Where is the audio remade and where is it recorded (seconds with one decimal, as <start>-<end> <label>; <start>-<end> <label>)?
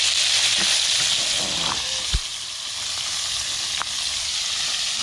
0.0-5.0 recorded